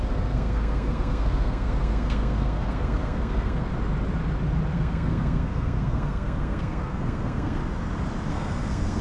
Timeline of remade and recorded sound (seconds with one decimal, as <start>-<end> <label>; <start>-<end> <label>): 0.0-3.7 remade; 3.7-4.7 recorded; 4.7-7.6 remade; 7.6-8.3 recorded; 8.3-9.0 remade